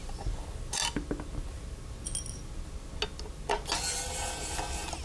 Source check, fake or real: real